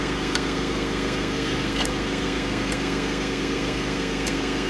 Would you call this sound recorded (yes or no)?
no